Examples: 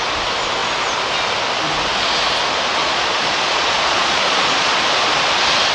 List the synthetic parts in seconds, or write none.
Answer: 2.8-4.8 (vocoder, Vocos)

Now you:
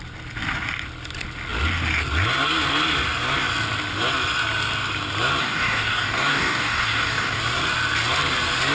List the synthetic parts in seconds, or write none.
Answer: 5.4-7.4 (codec, DAC)

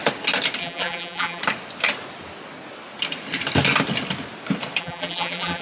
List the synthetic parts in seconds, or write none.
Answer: 0.6-1.4 (vocoder, BigVGAN v2); 4.8-5.6

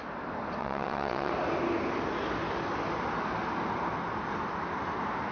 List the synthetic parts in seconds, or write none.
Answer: 0.6-1.3 (vocoder, WaveNeXt)

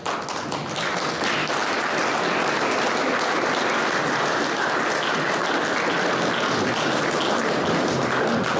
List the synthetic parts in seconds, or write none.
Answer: none